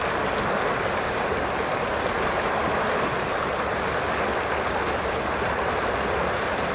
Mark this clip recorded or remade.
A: recorded